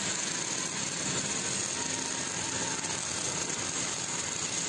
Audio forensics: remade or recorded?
recorded